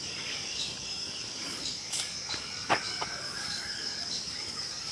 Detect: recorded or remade remade